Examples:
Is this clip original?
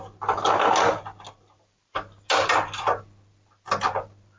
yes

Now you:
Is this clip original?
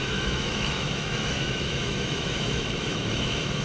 no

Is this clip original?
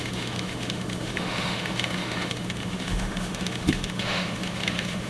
no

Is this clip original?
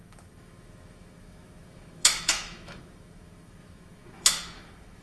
no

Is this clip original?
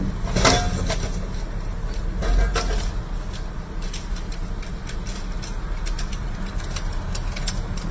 yes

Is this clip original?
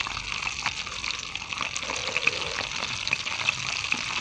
yes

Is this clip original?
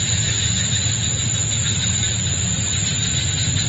yes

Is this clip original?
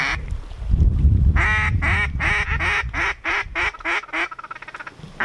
yes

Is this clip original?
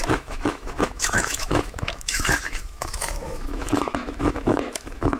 no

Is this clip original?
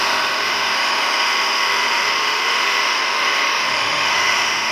no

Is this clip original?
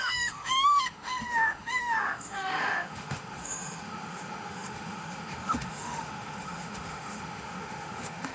no